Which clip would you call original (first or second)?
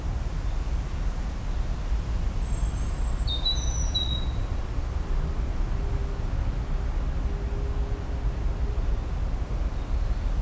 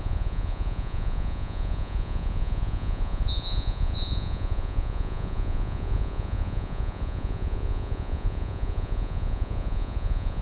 first